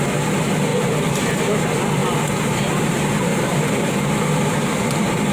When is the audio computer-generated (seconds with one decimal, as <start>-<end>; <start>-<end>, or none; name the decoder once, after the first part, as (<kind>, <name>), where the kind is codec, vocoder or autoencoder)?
3.3-5.3 (vocoder, BigVGAN v2)